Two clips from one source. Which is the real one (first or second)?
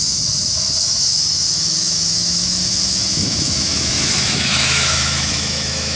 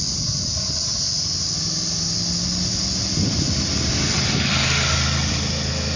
second